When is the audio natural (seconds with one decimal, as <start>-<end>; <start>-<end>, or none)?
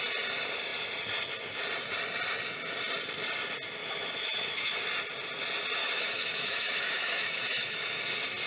0.0-3.8; 4.8-5.8; 8.0-8.5